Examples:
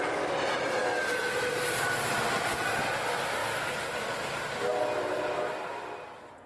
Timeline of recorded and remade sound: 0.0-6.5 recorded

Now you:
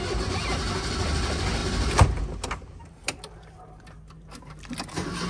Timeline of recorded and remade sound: 0.0-1.6 recorded; 1.6-2.2 remade; 2.2-5.3 recorded

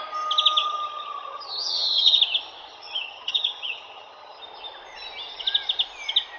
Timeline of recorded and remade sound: 0.0-0.6 recorded; 0.6-2.2 remade; 2.2-2.7 recorded; 2.7-4.4 remade; 4.4-6.4 recorded

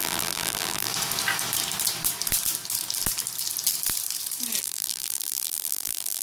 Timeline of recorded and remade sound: 0.0-0.9 remade; 0.9-4.6 recorded; 4.6-6.2 remade

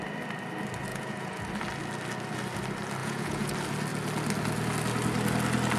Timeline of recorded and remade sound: 0.0-0.9 recorded; 0.9-1.4 remade; 1.4-3.0 recorded; 3.0-3.5 remade; 3.5-5.8 recorded

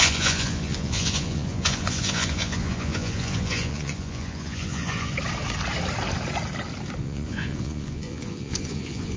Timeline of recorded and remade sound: 0.0-5.1 remade; 5.1-7.0 recorded; 7.0-9.2 remade

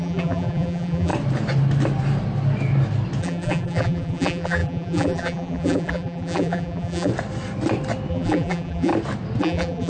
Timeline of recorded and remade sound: 0.0-1.1 remade; 1.1-3.2 recorded; 3.2-7.1 remade; 7.1-8.1 recorded; 8.1-8.9 remade; 8.9-9.4 recorded; 9.4-9.9 remade

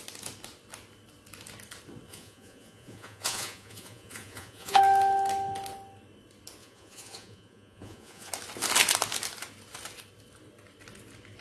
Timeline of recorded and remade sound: 0.0-2.1 recorded; 2.1-4.8 remade; 4.8-6.6 recorded; 6.6-8.3 remade; 8.3-11.4 recorded